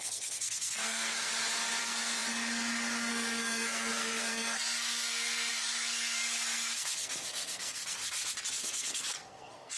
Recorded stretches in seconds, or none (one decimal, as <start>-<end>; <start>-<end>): 1.3-1.8; 8.0-8.5

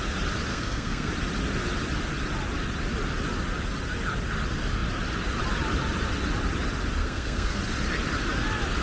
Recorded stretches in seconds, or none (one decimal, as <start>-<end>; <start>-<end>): 0.0-0.5; 1.1-7.0; 7.6-8.8

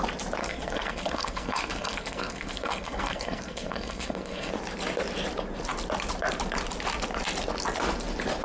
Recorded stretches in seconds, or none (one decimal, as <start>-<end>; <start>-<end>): 0.0-0.4; 4.5-8.4

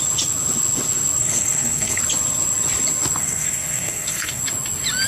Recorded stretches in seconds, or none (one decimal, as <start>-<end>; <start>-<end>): 0.0-1.2; 2.0-3.2; 4.4-5.1

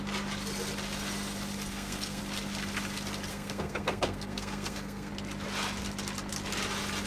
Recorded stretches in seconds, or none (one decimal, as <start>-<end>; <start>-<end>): 0.0-1.7; 2.2-3.3; 5.1-7.1

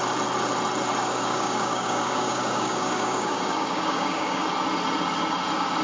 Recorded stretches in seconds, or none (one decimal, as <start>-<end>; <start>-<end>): 0.0-1.0; 4.5-5.8

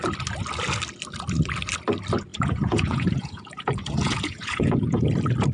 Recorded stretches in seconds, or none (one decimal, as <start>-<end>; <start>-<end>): 0.0-2.3; 5.1-5.5